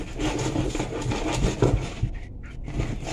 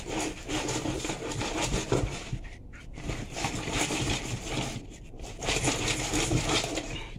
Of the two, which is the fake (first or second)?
second